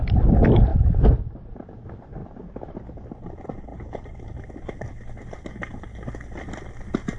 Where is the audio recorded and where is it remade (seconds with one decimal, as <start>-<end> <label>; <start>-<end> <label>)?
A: 0.0-2.2 recorded; 2.2-2.8 remade; 2.8-7.2 recorded